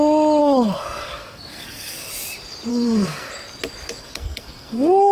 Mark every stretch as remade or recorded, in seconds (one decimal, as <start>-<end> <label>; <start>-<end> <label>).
0.0-0.4 recorded; 0.4-2.1 remade; 2.1-2.7 recorded; 2.7-3.3 remade; 3.3-4.0 recorded; 4.0-5.1 remade